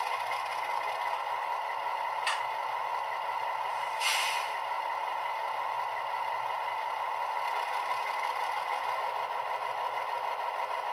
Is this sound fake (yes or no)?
no